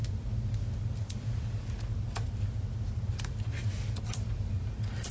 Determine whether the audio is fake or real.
real